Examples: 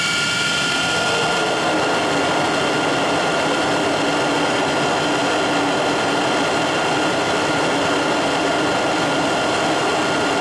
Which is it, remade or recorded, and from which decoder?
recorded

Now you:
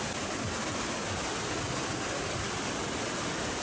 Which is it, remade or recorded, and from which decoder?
recorded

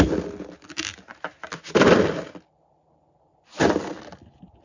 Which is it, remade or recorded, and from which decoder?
recorded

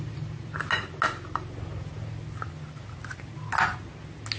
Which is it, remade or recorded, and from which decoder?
recorded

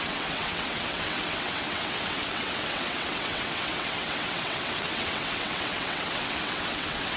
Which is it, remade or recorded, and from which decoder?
remade, vocoder, WaveNeXt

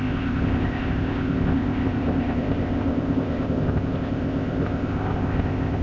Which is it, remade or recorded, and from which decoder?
remade, codec, ZipCodec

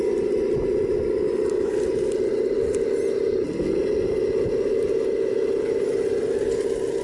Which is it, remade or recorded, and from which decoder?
recorded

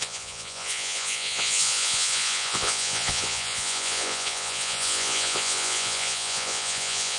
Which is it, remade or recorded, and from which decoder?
remade, vocoder, Vocos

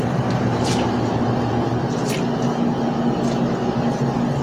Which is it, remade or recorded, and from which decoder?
recorded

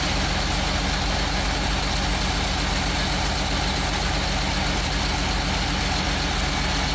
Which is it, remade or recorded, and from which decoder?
recorded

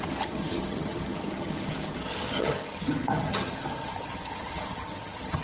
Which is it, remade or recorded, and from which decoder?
remade, vocoder, HiFi-GAN